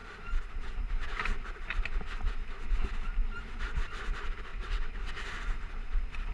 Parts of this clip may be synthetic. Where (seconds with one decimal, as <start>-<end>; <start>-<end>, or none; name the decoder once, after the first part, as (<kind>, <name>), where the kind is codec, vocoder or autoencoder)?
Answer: 4.5-5.1 (vocoder, WaveNeXt)